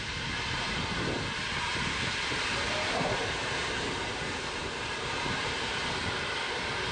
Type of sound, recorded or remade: remade